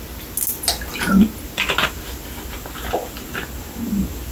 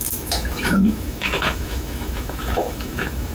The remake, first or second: second